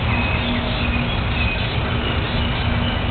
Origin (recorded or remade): recorded